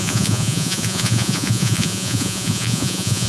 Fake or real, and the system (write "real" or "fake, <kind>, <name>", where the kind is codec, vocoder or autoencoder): fake, vocoder, Vocos